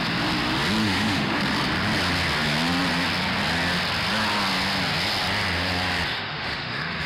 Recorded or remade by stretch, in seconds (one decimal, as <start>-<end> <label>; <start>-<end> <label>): 0.0-0.8 recorded; 0.8-1.4 remade; 1.4-6.1 recorded; 6.1-7.1 remade